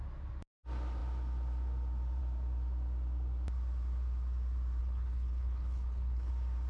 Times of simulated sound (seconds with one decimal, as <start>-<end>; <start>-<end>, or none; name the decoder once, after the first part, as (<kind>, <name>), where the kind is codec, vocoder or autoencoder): 4.8-6.3 (codec, HILCodec)